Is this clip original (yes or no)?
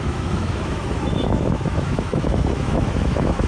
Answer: no